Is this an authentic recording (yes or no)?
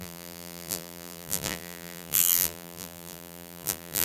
no